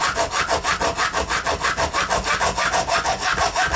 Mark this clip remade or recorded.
recorded